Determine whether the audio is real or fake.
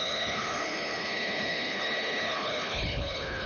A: fake